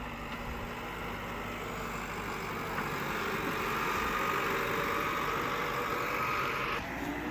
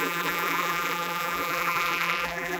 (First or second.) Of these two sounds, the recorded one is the first